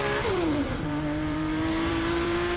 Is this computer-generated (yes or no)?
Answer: yes